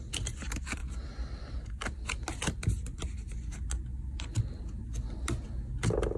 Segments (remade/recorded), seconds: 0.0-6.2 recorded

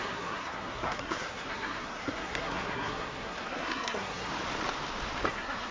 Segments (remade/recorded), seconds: 0.0-4.3 remade; 4.3-5.3 recorded; 5.3-5.7 remade

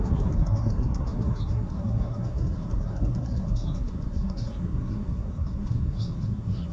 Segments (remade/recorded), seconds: 0.0-6.7 remade

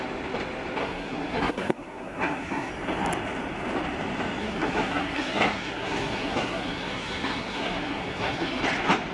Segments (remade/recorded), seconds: 0.0-0.8 recorded; 0.8-2.7 remade; 2.7-4.4 recorded; 4.4-8.6 remade; 8.6-9.1 recorded

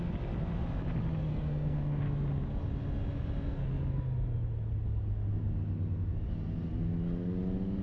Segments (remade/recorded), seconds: 0.0-1.3 recorded; 1.3-2.0 remade; 2.0-7.8 recorded

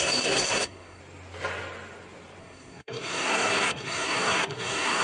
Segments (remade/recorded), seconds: 0.0-1.0 remade; 1.0-2.4 recorded; 2.4-5.0 remade

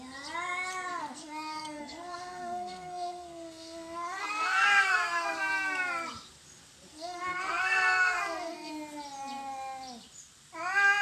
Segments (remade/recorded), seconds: 0.0-1.0 recorded; 1.0-5.4 remade; 5.4-6.9 recorded; 6.9-8.7 remade; 8.7-11.0 recorded